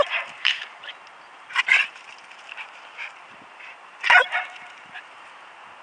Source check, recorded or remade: remade